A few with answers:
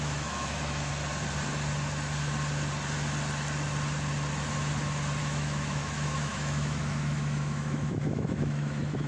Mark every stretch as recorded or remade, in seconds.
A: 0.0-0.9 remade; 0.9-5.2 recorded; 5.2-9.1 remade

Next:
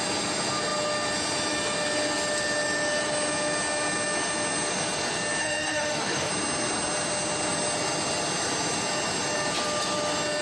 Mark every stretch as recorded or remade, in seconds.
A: 0.0-5.4 recorded; 5.4-6.3 remade; 6.3-10.4 recorded

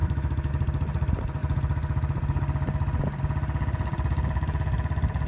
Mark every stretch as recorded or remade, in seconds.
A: 0.0-0.5 remade; 0.5-5.3 recorded